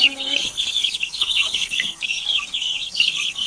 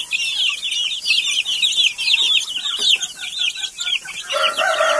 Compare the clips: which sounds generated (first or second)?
first